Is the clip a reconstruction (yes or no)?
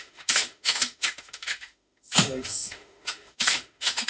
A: yes